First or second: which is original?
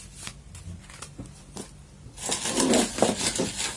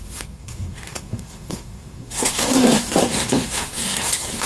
first